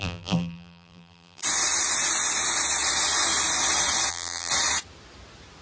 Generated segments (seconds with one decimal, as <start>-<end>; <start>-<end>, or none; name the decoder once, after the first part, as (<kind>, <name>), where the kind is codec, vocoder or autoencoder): 0.0-1.4 (vocoder, BigVGAN v2); 4.1-4.5